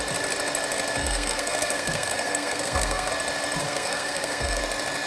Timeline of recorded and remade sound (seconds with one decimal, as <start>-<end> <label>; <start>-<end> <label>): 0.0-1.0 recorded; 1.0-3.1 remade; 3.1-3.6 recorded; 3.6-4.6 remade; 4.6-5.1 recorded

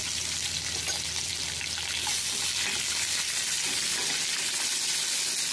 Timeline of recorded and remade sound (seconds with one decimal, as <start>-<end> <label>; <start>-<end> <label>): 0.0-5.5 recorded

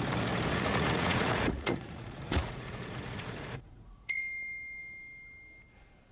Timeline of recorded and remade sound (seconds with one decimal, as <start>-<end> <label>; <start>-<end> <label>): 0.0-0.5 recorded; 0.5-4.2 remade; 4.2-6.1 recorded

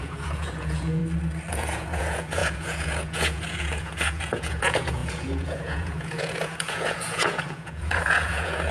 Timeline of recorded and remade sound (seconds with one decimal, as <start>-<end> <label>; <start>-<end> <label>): 0.0-1.0 remade; 1.0-1.5 recorded; 1.5-8.7 remade

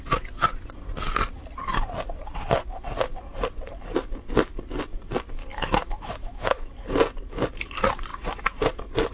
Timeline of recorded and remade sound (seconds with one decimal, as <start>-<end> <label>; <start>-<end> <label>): 0.0-5.5 recorded; 5.5-6.7 remade; 6.7-9.1 recorded

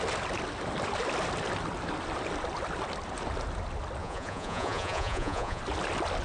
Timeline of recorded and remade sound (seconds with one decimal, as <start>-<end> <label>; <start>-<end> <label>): 0.0-4.0 recorded; 4.0-5.6 remade; 5.6-6.2 recorded

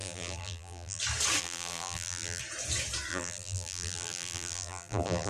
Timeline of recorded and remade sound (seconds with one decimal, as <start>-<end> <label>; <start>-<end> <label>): 0.0-1.0 remade; 1.0-1.4 recorded; 1.4-2.4 remade; 2.4-3.1 recorded; 3.1-5.3 remade